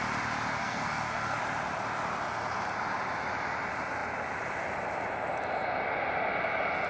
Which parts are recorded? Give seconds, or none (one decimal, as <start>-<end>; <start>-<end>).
0.0-0.6; 1.4-6.9